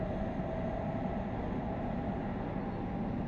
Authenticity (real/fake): real